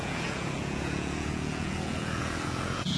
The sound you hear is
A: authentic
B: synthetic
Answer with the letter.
B